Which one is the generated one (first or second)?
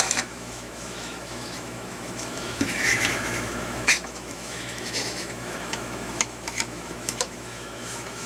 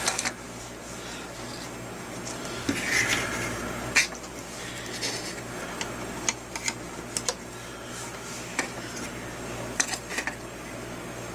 first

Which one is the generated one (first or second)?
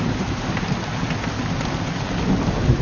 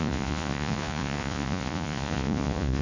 second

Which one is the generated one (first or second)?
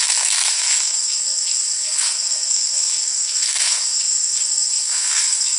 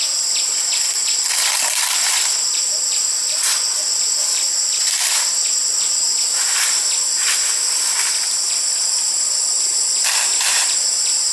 first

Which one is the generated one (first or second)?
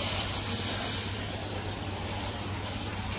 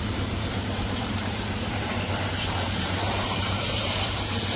second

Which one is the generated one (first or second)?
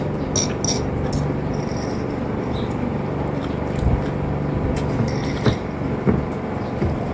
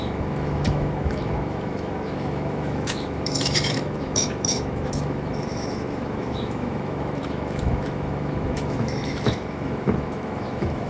second